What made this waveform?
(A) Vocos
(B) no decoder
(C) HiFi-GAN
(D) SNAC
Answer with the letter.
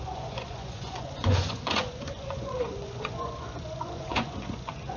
A